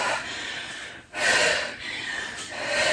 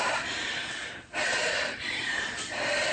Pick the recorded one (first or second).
first